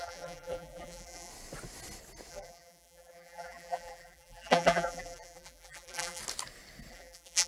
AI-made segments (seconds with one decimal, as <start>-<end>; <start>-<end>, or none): 0.0-1.3; 2.3-6.2; 6.9-7.5